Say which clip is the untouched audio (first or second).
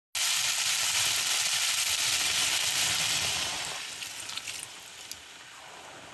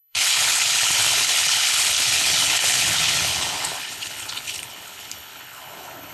first